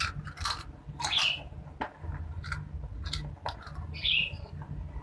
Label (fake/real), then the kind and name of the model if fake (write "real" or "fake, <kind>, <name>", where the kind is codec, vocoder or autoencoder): real